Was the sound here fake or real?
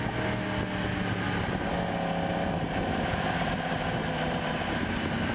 real